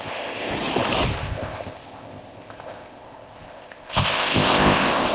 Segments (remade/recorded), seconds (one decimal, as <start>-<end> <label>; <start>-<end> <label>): 0.0-0.5 remade; 0.5-1.2 recorded; 1.2-5.1 remade